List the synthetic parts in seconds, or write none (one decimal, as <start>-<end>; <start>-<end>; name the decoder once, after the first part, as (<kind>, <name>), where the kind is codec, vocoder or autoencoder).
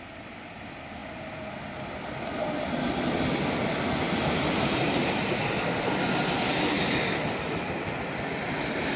none